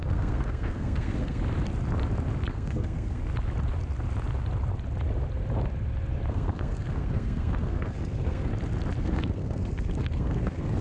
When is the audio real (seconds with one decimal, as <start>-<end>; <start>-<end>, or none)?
1.4-2.5; 3.2-6.3; 8.5-9.0